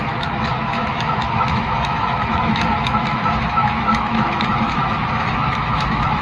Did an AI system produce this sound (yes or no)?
yes